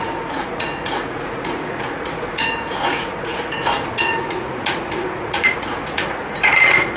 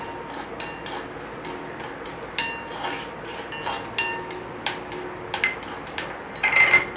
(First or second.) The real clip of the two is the second